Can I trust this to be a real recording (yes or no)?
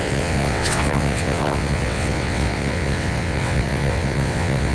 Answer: no